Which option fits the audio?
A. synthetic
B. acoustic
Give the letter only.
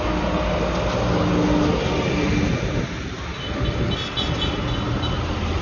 B